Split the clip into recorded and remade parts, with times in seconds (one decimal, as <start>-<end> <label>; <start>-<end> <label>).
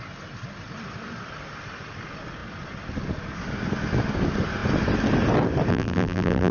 0.0-5.7 recorded; 5.7-6.5 remade